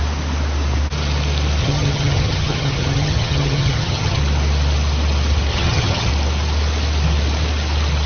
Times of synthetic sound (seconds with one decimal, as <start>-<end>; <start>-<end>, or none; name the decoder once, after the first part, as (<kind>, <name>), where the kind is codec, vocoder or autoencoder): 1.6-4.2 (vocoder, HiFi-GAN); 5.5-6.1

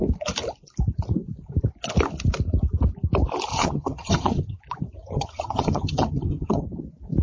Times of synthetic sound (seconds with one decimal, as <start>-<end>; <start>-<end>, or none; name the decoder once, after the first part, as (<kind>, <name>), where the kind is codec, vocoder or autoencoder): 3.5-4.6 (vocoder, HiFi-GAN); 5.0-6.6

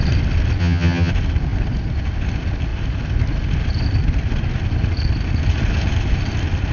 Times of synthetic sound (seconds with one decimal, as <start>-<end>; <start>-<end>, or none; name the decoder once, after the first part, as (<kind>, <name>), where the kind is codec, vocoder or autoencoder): 0.6-1.1 (vocoder, HiFi-GAN)

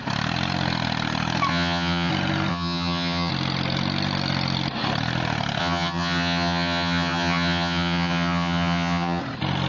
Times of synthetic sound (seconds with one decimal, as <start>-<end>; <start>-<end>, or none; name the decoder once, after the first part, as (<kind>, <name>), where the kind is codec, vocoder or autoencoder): 1.5-2.1 (vocoder, HiFi-GAN); 2.5-3.3; 5.6-9.2